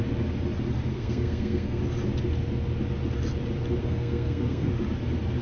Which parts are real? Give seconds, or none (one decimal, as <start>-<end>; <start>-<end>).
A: 0.0-0.9; 1.8-3.8; 4.7-5.4